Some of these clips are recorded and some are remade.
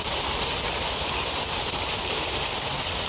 recorded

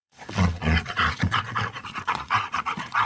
remade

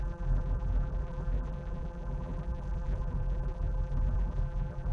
remade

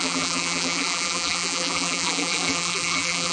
remade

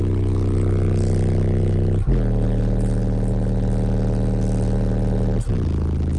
recorded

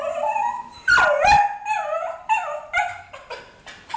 recorded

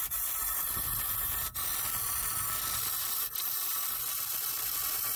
remade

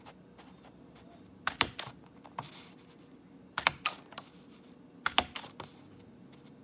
recorded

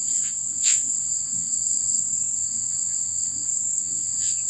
remade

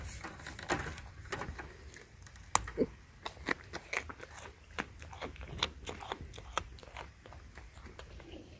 recorded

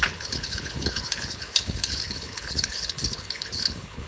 remade